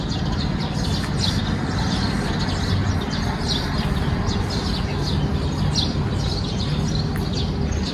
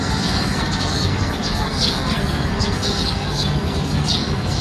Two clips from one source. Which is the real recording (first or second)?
first